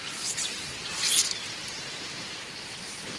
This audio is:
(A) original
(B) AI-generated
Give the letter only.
B